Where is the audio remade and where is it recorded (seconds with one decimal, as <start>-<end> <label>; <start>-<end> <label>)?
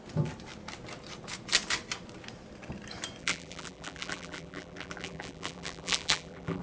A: 0.0-3.2 recorded; 3.2-6.6 remade